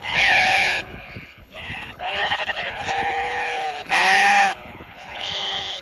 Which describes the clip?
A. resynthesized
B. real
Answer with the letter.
A